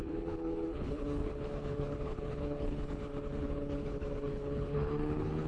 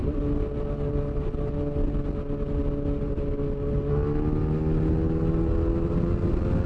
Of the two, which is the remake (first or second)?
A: first